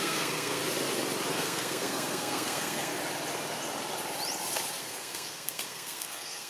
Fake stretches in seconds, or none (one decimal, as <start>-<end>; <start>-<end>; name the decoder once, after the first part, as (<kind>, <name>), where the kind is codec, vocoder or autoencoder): 0.0-0.6 (codec, SNAC); 1.3-2.9; 4.8-6.5